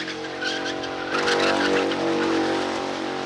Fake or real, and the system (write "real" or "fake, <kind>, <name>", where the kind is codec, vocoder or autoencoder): real